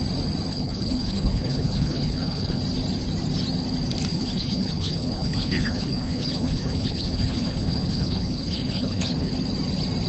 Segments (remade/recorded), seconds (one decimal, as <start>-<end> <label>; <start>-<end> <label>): 0.0-0.5 recorded; 0.5-2.6 remade; 2.6-4.1 recorded; 4.1-9.3 remade; 9.3-10.1 recorded